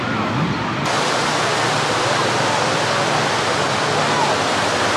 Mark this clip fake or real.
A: real